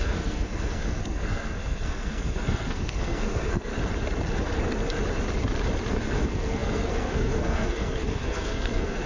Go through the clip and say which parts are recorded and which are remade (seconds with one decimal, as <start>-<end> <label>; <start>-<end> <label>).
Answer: 0.0-3.7 remade; 3.7-5.9 recorded; 5.9-9.1 remade